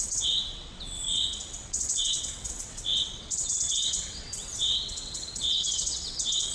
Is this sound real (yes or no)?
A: no